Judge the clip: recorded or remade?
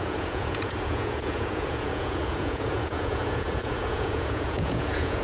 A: remade